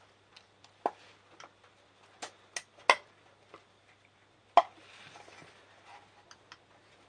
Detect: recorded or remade recorded